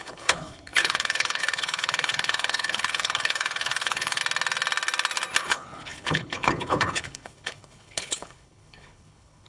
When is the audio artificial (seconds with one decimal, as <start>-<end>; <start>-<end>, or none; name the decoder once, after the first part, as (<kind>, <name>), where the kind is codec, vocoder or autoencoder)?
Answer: 0.0-4.2 (codec, HILCodec); 5.4-9.5